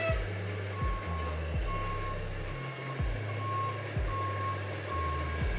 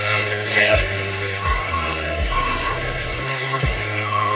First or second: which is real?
first